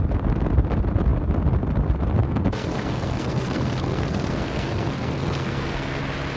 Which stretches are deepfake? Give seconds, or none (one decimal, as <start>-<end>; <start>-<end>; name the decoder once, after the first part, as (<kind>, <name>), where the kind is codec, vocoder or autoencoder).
2.2-6.0 (codec, SNAC)